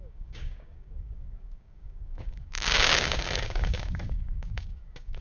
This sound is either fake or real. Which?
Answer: fake